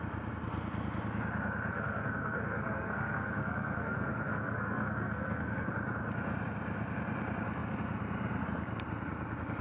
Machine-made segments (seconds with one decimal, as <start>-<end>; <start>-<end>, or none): 1.7-5.7